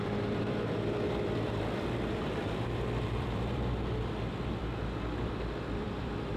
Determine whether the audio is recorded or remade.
remade